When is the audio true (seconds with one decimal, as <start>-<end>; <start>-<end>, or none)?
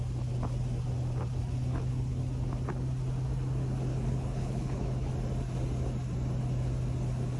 0.0-1.7; 2.2-3.9; 5.1-7.4